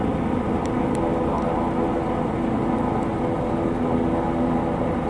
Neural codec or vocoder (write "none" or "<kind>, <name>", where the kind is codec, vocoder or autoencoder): none